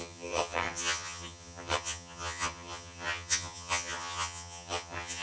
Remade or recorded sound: remade